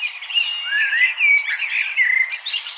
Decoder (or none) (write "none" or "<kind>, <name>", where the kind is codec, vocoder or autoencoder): none